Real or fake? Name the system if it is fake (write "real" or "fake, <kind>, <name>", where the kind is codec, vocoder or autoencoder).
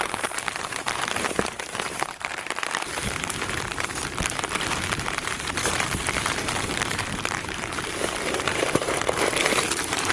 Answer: fake, vocoder, BigVGAN v2